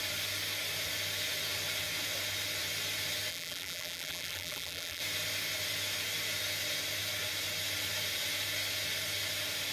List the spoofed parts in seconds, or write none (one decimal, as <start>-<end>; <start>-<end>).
3.3-5.0

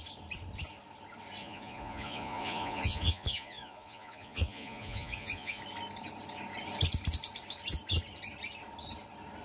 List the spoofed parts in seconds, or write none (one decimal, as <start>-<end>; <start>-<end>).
1.4-5.6

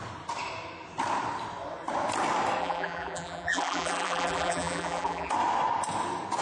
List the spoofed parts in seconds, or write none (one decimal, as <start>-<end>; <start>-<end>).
2.6-5.3

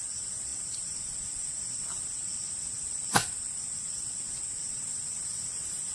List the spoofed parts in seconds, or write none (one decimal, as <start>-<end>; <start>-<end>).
none

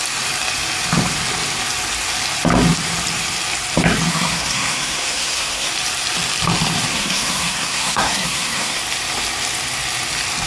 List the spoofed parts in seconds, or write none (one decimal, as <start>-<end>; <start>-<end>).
4.1-5.7; 6.9-8.8